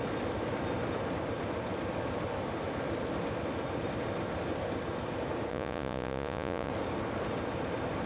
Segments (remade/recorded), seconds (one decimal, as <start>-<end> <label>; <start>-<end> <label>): 0.0-5.5 recorded; 5.5-6.7 remade; 6.7-8.1 recorded